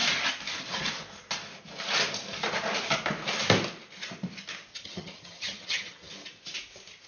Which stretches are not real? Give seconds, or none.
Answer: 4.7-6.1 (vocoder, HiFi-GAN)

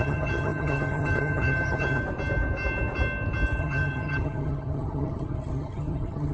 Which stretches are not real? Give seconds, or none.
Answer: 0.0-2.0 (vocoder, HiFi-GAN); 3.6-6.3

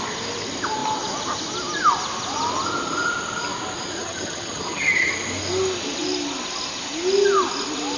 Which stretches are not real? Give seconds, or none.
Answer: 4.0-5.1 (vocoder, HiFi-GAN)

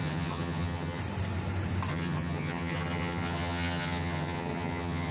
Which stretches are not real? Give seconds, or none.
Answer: 0.0-1.0 (vocoder, HiFi-GAN); 1.9-5.1

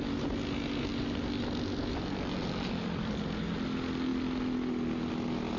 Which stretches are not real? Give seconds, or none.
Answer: none

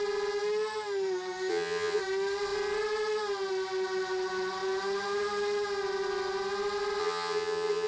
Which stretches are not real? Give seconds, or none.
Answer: 1.5-2.0 (vocoder, HiFi-GAN); 7.0-7.9

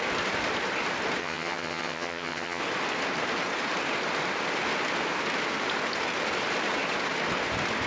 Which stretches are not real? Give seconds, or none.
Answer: 1.2-2.6 (vocoder, HiFi-GAN)

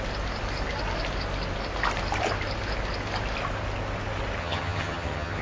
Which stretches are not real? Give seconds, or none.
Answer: 4.4-5.4 (vocoder, HiFi-GAN)